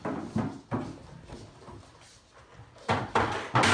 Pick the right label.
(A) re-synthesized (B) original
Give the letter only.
B